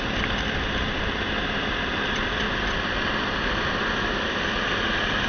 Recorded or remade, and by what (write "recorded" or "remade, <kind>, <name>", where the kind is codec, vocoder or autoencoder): recorded